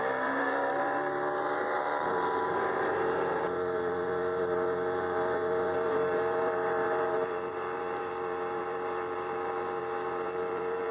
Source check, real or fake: fake